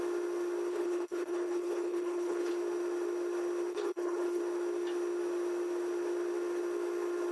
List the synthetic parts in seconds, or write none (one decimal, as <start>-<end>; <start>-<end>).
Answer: 0.7-2.5; 3.7-4.4